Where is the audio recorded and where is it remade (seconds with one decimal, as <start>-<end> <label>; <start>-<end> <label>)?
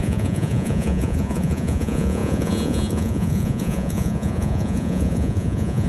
0.0-5.9 remade